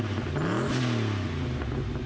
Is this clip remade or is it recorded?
recorded